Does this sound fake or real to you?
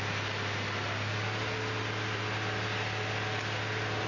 real